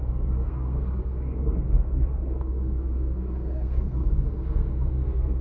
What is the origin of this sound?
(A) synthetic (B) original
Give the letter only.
A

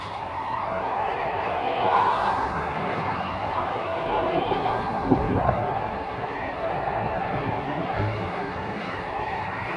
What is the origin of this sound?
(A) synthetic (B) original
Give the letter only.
A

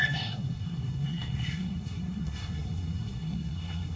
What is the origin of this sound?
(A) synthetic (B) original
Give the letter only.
A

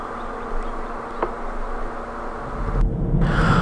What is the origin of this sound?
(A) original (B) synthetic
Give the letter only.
A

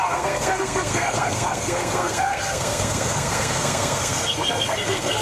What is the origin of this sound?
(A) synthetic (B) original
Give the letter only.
A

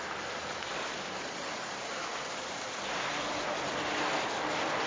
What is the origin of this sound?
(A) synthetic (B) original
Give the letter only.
B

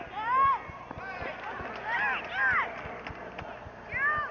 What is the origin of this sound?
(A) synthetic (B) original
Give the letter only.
B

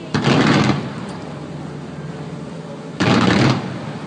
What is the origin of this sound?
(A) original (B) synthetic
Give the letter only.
A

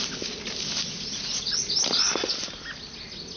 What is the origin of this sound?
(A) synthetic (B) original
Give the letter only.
B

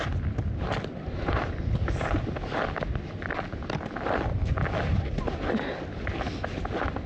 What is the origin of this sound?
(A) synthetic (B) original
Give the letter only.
B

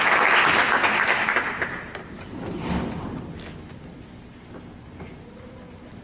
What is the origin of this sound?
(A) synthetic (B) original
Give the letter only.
B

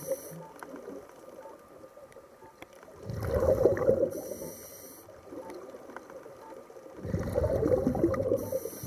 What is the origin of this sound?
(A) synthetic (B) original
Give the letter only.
B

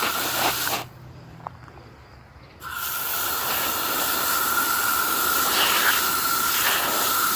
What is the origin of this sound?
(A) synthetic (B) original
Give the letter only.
B